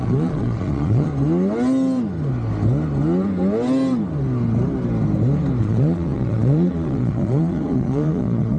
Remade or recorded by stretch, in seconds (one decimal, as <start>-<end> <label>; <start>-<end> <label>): 0.0-1.1 remade; 1.1-5.6 recorded; 5.6-8.6 remade